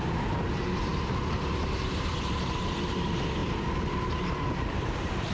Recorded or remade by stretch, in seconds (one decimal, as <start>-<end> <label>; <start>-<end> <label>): 0.0-3.4 remade; 3.4-4.5 recorded; 4.5-5.3 remade